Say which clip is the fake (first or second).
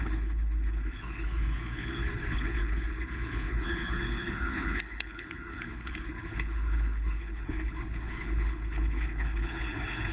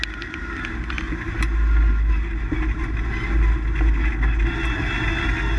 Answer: first